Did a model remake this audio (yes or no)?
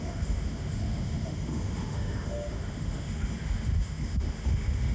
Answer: yes